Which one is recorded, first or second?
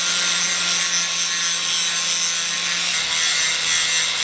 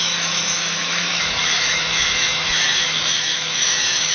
first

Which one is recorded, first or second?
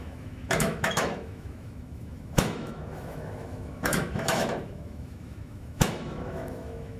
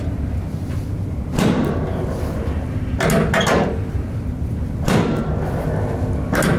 second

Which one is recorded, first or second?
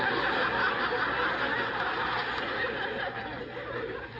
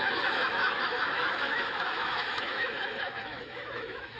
first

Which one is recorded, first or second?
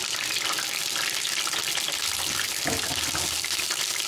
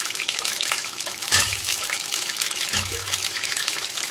first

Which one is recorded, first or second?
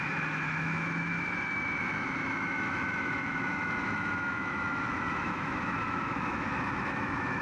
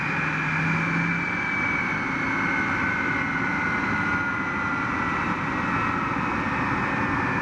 second